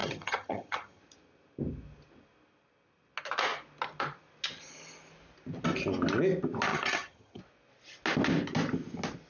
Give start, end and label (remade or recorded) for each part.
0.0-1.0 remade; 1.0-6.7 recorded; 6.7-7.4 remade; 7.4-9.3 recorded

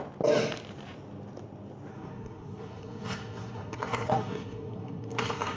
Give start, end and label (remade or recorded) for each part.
0.0-1.9 recorded; 1.9-5.6 remade

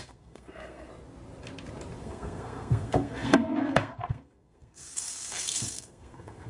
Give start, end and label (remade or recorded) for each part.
0.0-0.9 remade; 0.9-2.0 recorded; 2.0-6.5 remade

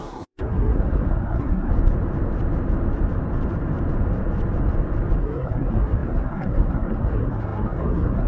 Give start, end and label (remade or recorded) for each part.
0.0-1.7 remade; 1.7-5.2 recorded; 5.2-8.3 remade

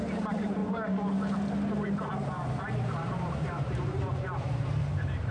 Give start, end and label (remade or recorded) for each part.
0.0-0.6 remade; 0.6-1.9 recorded; 1.9-5.3 remade